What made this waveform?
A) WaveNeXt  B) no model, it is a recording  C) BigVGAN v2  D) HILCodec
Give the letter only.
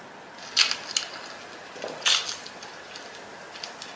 B